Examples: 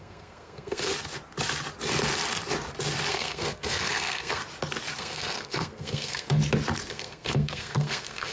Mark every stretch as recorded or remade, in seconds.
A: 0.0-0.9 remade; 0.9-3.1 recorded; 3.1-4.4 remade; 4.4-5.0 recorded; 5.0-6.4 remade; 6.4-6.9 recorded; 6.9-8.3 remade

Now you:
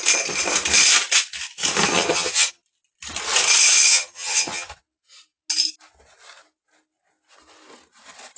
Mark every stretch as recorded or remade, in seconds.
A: 0.0-1.9 recorded; 1.9-2.6 remade; 2.6-3.9 recorded; 3.9-4.7 remade; 4.7-8.4 recorded

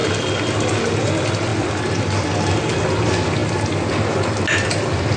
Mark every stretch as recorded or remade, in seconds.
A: 0.0-5.2 recorded

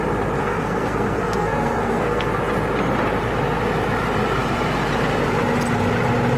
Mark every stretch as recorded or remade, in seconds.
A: 0.0-0.4 recorded; 0.4-2.4 remade; 2.4-6.4 recorded

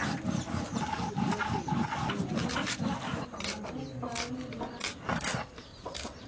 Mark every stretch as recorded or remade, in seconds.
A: 0.0-6.3 recorded

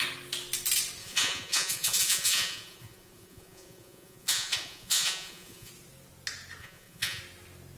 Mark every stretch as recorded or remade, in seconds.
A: 0.0-1.0 recorded; 1.0-5.7 remade; 5.7-6.6 recorded; 6.6-7.2 remade; 7.2-7.8 recorded

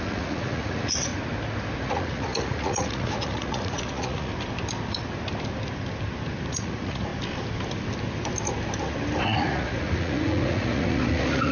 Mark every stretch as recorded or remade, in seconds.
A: 0.0-1.1 remade; 1.1-1.8 recorded; 1.8-4.3 remade; 4.3-6.5 recorded; 6.5-7.1 remade; 7.1-9.2 recorded; 9.2-11.5 remade